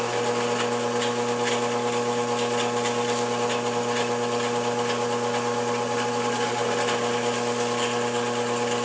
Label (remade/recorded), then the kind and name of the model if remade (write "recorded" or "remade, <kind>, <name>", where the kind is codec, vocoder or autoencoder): recorded